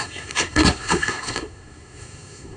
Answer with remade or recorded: remade